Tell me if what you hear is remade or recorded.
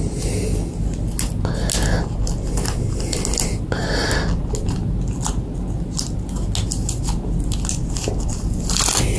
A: recorded